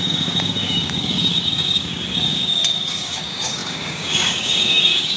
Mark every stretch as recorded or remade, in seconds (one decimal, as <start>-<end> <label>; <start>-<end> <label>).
0.0-5.2 remade

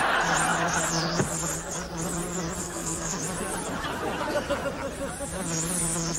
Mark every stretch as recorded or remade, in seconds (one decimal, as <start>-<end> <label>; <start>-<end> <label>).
0.0-2.6 recorded; 2.6-3.2 remade; 3.2-6.2 recorded